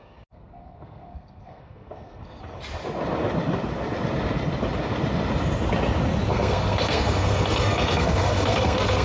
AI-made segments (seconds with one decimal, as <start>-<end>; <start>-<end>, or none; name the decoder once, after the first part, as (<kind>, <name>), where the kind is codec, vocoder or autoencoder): 0.0-2.4 (codec, SNAC); 6.3-9.0

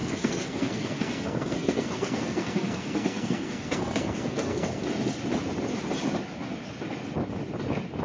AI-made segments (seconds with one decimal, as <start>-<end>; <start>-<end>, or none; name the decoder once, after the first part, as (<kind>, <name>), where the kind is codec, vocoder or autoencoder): 0.0-4.8 (codec, SNAC)

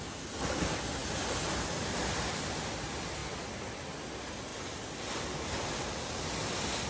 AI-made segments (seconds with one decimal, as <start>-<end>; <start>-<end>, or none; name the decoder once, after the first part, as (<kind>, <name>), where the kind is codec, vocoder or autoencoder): none

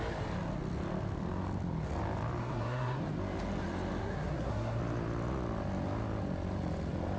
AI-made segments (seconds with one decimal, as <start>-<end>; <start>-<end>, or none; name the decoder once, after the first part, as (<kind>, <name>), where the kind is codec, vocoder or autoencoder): 2.4-3.0 (codec, SNAC); 4.0-4.8

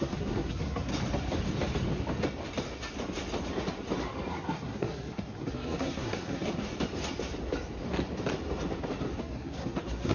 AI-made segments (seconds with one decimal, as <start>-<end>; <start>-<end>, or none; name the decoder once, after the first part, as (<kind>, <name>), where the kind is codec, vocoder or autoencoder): 0.0-0.9 (codec, SNAC); 4.3-6.7; 9.2-10.1

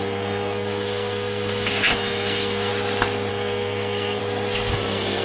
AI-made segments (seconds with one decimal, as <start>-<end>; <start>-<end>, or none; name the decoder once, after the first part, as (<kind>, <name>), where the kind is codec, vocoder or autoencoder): 0.0-2.7 (codec, SNAC); 3.3-4.2; 4.7-5.2

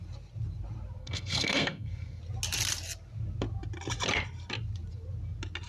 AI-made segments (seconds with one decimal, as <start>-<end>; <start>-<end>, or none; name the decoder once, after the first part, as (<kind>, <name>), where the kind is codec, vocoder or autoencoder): 1.0-2.2 (codec, SNAC)

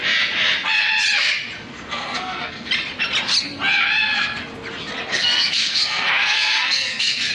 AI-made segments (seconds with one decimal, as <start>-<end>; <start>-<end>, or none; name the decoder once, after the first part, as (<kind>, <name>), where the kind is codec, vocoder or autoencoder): 1.7-2.7 (codec, SNAC); 4.0-4.5; 5.1-7.3